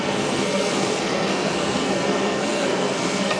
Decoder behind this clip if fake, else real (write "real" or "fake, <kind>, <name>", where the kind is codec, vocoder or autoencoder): fake, codec, SNAC